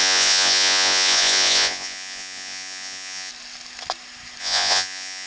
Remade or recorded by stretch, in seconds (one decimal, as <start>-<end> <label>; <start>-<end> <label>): 0.0-3.3 remade; 3.3-4.4 recorded; 4.4-5.3 remade

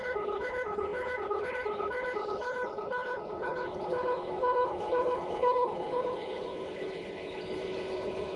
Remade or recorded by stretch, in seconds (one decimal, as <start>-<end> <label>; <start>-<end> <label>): 0.0-8.4 remade

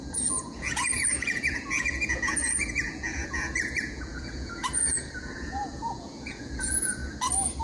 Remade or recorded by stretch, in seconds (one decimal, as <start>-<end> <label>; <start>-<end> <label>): 0.0-7.0 remade; 7.0-7.6 recorded

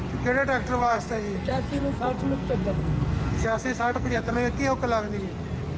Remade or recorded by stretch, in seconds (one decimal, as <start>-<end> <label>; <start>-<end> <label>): 0.0-0.8 recorded; 0.8-4.3 remade; 4.3-5.8 recorded

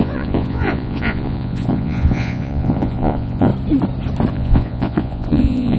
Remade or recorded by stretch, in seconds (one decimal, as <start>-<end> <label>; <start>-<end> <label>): 0.0-3.5 remade; 3.5-4.3 recorded; 4.3-5.8 remade